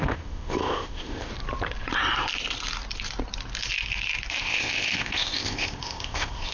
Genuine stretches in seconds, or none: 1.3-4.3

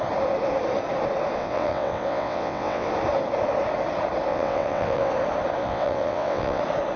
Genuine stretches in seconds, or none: 0.0-1.4; 2.9-4.3; 5.1-5.6; 6.6-7.0